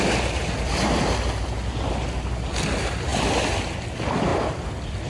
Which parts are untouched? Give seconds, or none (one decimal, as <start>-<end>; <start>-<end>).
0.0-5.1